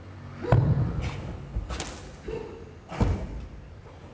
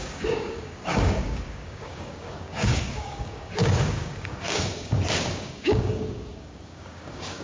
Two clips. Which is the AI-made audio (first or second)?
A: second